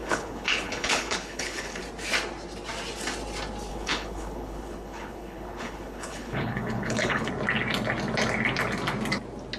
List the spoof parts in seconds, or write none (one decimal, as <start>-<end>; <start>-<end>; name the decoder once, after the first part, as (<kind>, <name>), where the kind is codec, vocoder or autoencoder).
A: 0.0-1.8 (codec, HILCodec); 3.7-7.3